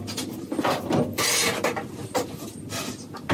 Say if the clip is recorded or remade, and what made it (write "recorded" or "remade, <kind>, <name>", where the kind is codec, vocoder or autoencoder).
recorded